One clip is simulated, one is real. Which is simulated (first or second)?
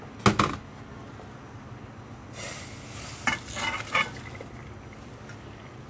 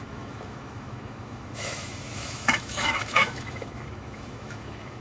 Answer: second